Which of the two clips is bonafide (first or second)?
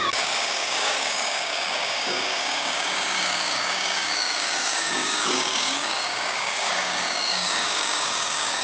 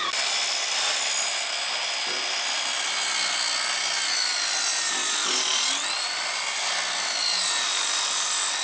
second